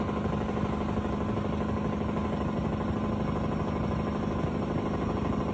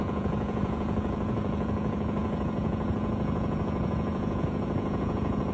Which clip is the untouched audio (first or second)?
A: first